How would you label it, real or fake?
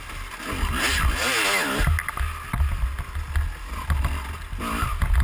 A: real